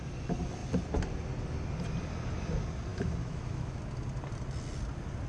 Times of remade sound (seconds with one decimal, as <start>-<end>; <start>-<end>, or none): 2.9-3.8